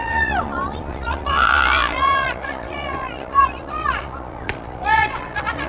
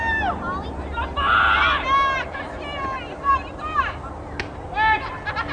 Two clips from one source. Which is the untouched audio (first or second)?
second